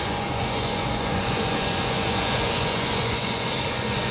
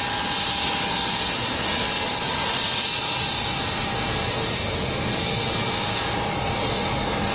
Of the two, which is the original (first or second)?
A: second